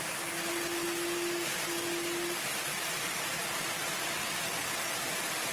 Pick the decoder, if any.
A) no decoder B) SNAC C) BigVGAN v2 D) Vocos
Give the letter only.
A